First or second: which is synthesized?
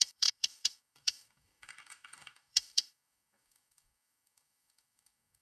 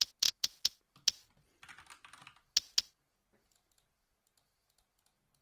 first